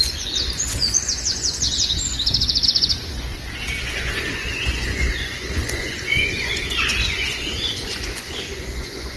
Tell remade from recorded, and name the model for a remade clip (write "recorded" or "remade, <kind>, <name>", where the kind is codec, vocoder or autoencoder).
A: remade, vocoder, Vocos